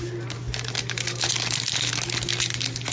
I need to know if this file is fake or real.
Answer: real